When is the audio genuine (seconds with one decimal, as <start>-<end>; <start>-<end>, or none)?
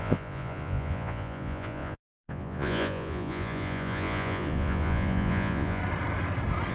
5.8-6.7